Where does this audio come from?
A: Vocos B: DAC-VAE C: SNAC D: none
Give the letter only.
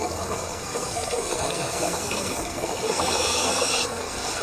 C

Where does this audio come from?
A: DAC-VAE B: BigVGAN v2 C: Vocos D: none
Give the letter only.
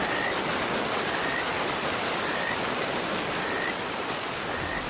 D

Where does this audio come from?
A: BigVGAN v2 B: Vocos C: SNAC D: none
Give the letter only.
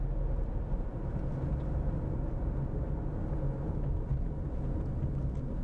D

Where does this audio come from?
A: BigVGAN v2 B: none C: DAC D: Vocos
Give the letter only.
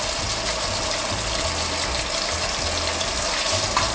B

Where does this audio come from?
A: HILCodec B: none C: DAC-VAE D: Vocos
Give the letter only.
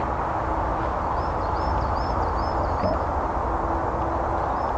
B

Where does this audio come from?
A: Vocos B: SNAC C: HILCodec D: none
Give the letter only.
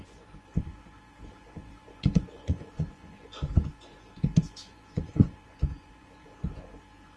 A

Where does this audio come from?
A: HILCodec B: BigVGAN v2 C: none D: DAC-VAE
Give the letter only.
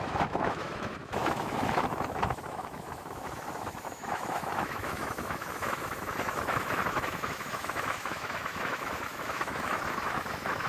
D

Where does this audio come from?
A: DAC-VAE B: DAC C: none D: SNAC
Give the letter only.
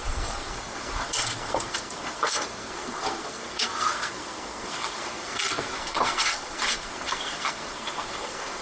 D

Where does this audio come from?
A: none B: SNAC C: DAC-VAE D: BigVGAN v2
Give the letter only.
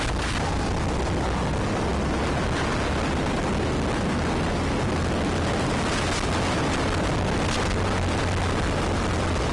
A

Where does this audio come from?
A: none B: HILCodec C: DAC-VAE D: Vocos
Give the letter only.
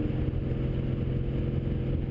A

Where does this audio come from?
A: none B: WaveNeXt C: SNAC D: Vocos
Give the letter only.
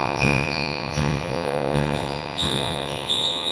B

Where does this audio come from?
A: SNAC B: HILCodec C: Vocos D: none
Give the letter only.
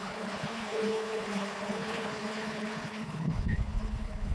B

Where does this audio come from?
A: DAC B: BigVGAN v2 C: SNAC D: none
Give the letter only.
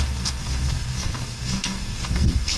C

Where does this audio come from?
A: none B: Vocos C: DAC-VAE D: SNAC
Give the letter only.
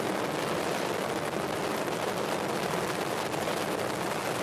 A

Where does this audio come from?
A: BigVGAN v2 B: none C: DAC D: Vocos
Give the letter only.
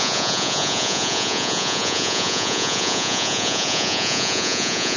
D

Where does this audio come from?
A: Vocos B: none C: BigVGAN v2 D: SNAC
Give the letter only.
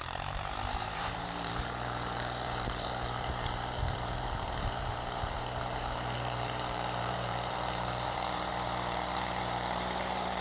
C